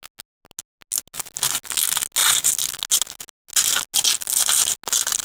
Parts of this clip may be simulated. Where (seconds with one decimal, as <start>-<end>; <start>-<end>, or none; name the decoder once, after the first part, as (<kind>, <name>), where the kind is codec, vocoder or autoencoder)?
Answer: none